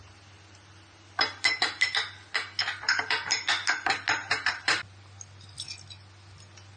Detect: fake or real real